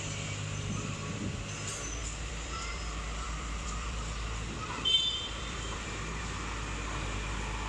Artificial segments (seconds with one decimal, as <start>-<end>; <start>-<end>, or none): 2.0-6.2